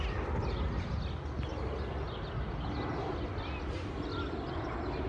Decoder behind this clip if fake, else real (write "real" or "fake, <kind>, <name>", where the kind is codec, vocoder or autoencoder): real